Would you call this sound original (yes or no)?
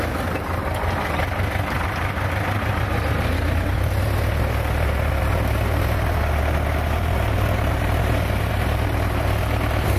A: yes